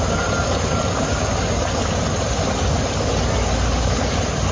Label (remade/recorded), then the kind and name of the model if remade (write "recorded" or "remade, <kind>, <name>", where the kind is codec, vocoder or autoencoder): recorded